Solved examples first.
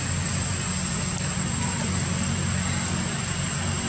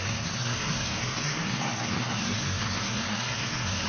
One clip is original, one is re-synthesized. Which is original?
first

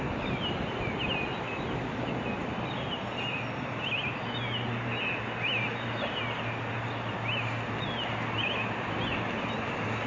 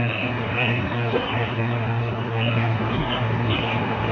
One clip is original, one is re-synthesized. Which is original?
first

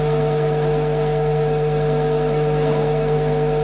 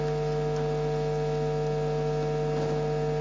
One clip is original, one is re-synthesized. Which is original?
second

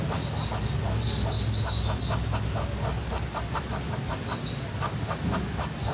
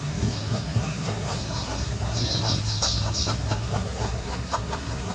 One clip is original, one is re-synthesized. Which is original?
first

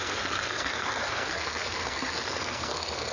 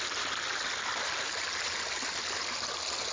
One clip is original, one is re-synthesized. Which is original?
second